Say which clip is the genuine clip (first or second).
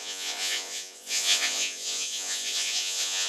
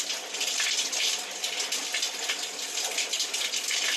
second